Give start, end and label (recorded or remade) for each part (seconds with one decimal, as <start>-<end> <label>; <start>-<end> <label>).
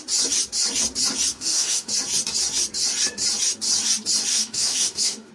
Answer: 0.0-1.3 recorded; 1.3-1.9 remade; 1.9-4.3 recorded; 4.3-5.3 remade